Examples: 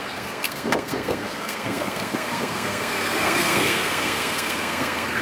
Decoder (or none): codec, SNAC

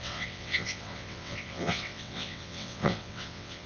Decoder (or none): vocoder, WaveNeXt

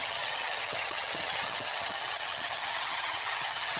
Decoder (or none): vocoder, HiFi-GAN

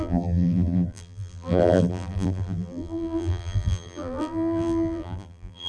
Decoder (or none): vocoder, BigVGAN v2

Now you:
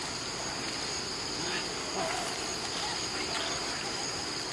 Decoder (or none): none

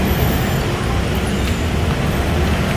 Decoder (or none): none